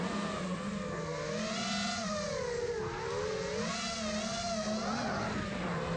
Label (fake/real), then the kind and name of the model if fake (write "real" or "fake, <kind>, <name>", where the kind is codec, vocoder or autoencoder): real